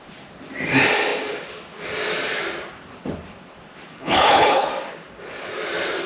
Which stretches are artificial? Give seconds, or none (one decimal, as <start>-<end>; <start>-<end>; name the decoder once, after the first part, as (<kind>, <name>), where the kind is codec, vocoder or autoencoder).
3.9-4.7 (codec, HILCodec)